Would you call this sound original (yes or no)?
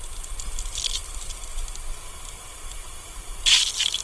yes